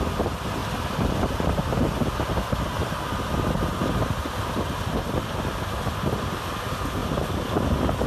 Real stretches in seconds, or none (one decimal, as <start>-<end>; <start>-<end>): 0.0-0.6; 1.1-8.1

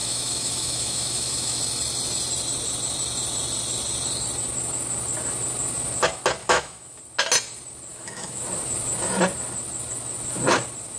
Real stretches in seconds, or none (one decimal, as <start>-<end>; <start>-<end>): 1.6-6.4; 7.0-7.9; 8.4-11.0

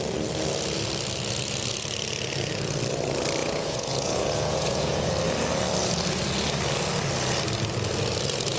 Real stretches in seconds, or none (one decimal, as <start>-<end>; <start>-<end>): 0.0-3.4; 5.1-8.6

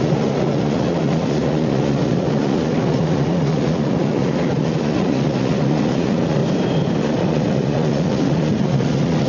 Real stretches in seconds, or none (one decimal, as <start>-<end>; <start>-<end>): 6.4-7.0

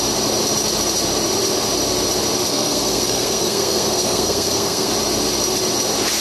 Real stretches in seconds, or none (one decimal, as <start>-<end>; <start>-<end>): 0.0-2.5; 4.9-6.2

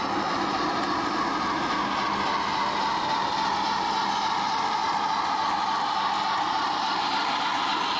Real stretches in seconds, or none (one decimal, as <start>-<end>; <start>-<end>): 0.0-8.0